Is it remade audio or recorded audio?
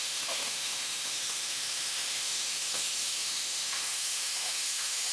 remade